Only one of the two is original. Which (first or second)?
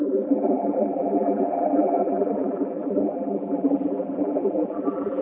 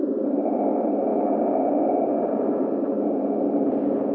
second